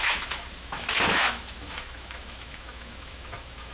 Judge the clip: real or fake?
fake